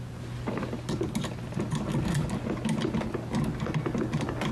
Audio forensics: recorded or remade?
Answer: recorded